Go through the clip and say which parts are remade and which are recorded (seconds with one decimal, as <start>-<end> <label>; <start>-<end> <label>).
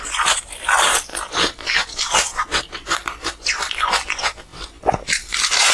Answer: 0.0-5.7 recorded